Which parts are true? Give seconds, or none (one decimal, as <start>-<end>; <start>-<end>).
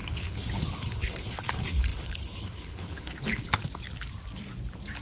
3.6-5.0